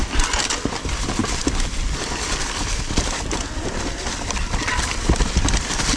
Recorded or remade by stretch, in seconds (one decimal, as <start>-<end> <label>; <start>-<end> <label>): 0.0-6.0 remade